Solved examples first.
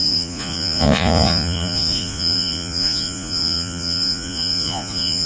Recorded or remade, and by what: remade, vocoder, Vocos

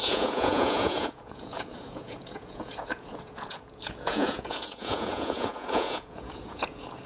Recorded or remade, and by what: remade, vocoder, Vocos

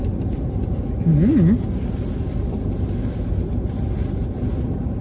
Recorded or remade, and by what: recorded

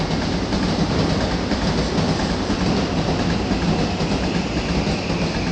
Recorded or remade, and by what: recorded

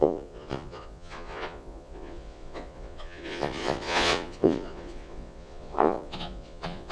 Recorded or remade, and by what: remade, vocoder, Vocos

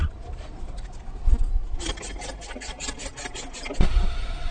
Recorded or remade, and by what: recorded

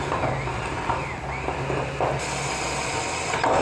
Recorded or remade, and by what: recorded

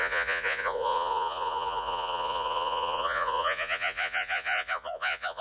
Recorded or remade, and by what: remade, vocoder, Vocos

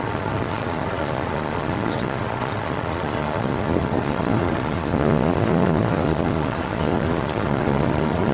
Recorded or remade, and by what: remade, vocoder, Vocos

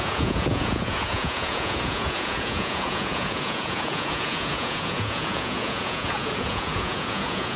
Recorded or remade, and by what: remade, vocoder, Vocos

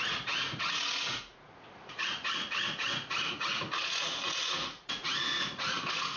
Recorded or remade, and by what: remade, vocoder, Vocos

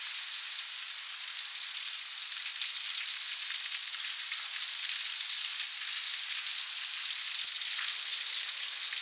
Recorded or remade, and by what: recorded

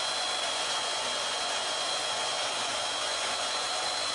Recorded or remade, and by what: remade, vocoder, Vocos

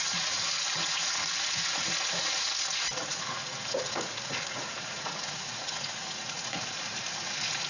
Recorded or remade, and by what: remade, vocoder, Vocos